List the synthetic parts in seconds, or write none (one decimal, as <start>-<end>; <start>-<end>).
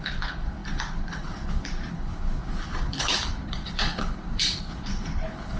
0.0-5.6